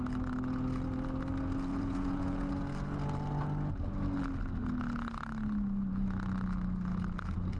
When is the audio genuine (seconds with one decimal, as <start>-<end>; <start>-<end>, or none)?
0.0-1.7; 2.5-7.6